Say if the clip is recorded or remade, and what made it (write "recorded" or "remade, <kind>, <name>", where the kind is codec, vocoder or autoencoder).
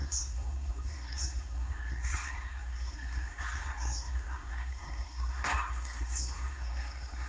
remade, codec, SNAC